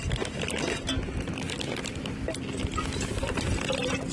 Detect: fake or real real